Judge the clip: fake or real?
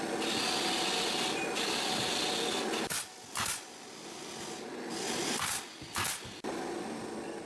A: real